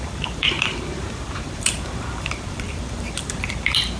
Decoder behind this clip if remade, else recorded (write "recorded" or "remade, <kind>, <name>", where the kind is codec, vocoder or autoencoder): remade, vocoder, BigVGAN v2